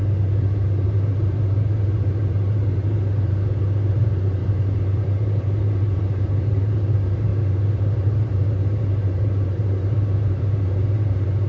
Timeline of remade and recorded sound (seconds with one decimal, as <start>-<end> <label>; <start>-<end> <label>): 0.0-11.5 remade